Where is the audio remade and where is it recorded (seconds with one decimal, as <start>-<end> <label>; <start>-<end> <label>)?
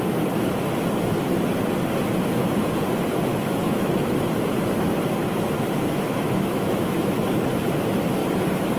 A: 0.0-3.3 recorded; 3.3-3.9 remade; 3.9-5.2 recorded; 5.2-7.1 remade; 7.1-8.8 recorded